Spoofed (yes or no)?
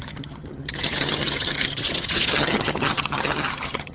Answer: yes